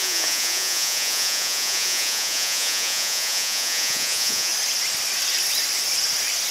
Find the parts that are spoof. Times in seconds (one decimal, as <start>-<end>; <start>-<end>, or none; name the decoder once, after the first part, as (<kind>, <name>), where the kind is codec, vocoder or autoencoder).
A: 0.0-4.5 (vocoder, Vocos)

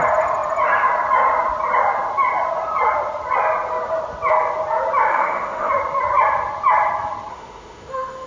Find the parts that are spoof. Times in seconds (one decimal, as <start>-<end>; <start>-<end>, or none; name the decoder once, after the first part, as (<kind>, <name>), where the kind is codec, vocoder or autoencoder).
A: 5.1-5.7 (autoencoder, DAC-VAE); 7.3-8.3

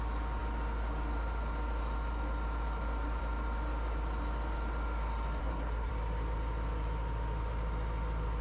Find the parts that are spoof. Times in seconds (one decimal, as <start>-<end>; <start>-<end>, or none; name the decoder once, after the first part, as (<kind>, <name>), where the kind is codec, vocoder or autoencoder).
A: 5.4-5.9 (codec, SNAC)

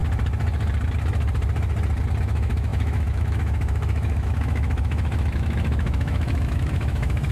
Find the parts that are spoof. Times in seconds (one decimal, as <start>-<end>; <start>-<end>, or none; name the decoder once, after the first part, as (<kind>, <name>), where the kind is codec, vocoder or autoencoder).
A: 2.2-7.3 (autoencoder, DAC-VAE)

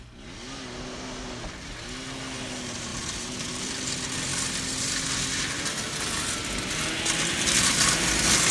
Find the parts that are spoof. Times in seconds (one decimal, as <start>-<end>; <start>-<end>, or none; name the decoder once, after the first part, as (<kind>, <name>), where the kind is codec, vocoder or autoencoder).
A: 2.9-3.8 (vocoder, BigVGAN v2)

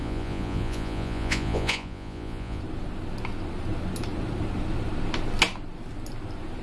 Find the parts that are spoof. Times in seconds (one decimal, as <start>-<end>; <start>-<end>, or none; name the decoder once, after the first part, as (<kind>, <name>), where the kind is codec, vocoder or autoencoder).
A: 0.0-2.6 (vocoder, Vocos)

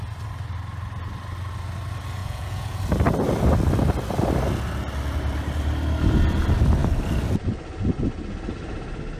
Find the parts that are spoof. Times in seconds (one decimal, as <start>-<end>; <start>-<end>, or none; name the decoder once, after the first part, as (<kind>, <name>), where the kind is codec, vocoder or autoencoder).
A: 2.2-2.8 (vocoder, Vocos)

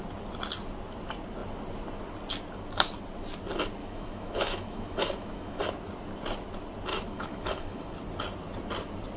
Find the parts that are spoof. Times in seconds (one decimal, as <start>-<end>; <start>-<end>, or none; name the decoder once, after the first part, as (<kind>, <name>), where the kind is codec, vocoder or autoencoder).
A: 3.8-5.6 (autoencoder, DAC-VAE); 6.9-7.9